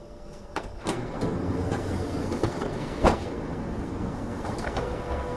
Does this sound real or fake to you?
fake